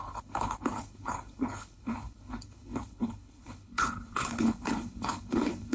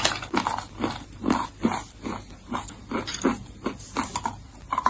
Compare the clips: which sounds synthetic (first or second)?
first